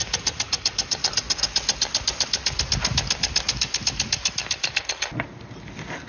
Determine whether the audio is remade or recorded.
recorded